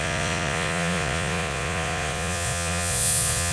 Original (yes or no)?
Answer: no